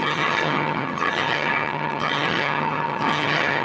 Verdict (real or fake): fake